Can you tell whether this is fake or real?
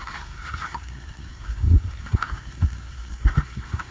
fake